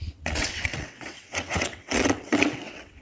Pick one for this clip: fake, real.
fake